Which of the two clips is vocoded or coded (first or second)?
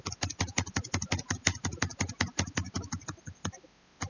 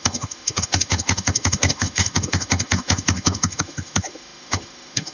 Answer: second